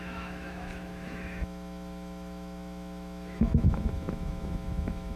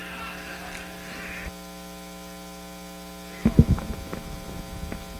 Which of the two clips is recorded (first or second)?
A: second